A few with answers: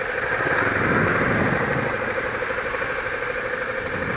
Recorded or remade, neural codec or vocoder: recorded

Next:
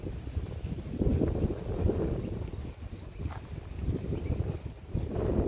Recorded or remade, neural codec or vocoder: recorded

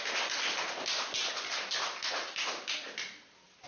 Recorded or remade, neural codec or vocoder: recorded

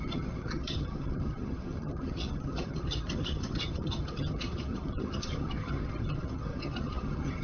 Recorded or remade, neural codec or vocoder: remade, vocoder, HiFi-GAN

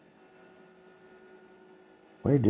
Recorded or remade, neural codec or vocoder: recorded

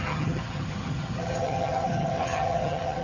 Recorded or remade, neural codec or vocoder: remade, vocoder, HiFi-GAN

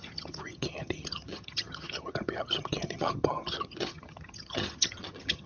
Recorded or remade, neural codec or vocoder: remade, vocoder, HiFi-GAN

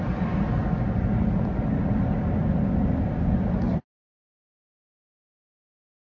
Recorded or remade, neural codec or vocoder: recorded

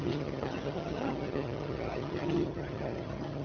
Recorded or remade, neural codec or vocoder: remade, vocoder, HiFi-GAN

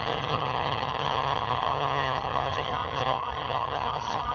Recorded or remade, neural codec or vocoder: remade, vocoder, HiFi-GAN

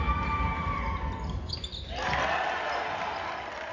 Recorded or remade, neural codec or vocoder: recorded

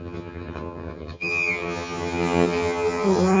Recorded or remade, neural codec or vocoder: remade, vocoder, HiFi-GAN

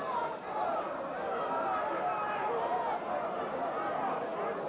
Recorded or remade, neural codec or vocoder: recorded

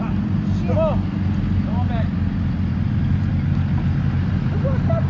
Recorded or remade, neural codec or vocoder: recorded